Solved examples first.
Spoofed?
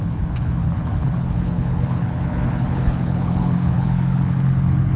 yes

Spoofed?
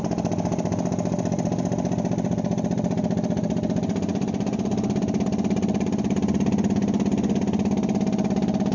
no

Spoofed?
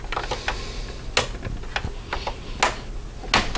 no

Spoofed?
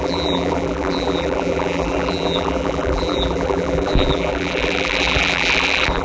yes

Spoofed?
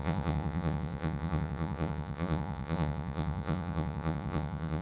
yes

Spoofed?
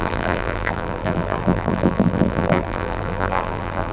yes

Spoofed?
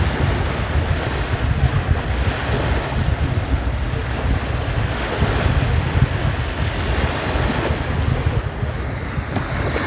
no